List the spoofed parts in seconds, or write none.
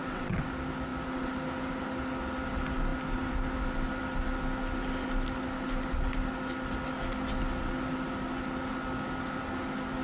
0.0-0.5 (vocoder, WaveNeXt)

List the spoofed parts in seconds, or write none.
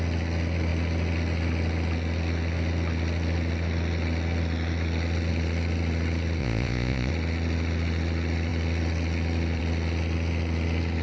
6.4-7.1 (vocoder, Vocos)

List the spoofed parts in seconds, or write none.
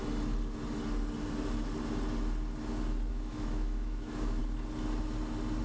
3.1-4.4 (autoencoder, DAC-VAE)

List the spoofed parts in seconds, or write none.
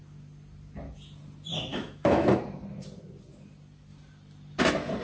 1.7-2.4 (autoencoder, DAC-VAE)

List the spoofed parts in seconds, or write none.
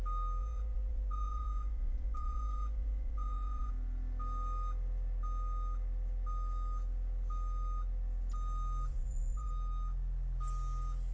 0.4-3.7 (vocoder, Vocos); 8.9-9.5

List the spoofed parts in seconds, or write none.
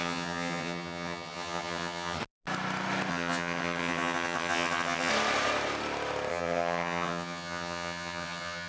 0.0-2.2 (vocoder, HiFi-GAN); 3.1-5.1; 6.3-8.7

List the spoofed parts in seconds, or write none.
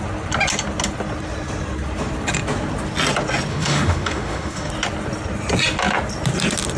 3.5-4.7 (autoencoder, DAC-VAE)